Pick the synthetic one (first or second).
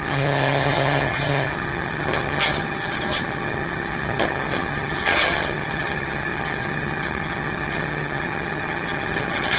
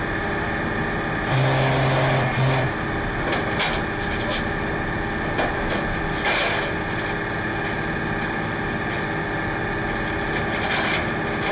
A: first